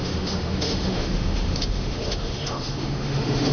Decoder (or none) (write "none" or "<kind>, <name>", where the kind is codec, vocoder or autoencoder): autoencoder, DAC-VAE